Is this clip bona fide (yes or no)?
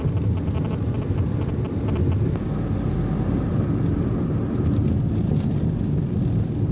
yes